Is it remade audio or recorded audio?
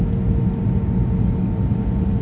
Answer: recorded